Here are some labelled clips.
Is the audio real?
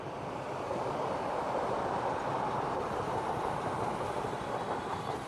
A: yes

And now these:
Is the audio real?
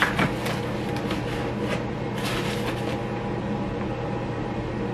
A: yes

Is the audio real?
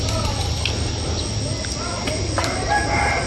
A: yes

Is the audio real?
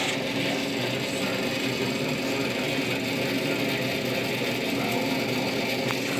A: yes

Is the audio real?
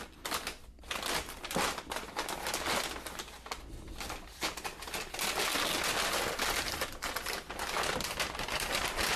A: yes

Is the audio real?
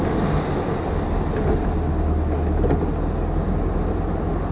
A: yes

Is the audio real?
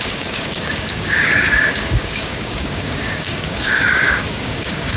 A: no